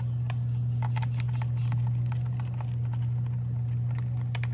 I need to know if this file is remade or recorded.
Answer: recorded